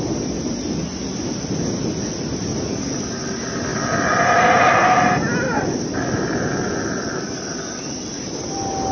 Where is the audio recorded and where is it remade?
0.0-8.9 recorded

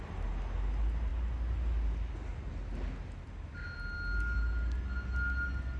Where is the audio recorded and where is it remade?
0.0-5.8 recorded

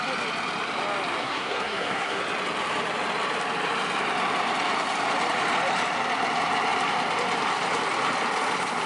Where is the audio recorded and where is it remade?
0.0-1.2 recorded; 1.2-2.2 remade; 2.2-8.9 recorded